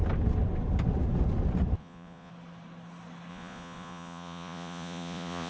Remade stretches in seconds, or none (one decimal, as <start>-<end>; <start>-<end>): 1.8-2.3; 3.3-5.5